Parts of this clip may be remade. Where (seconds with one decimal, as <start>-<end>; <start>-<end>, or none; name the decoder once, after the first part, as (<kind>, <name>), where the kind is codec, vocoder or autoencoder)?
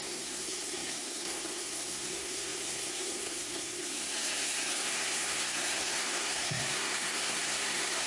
0.0-8.1 (codec, SNAC)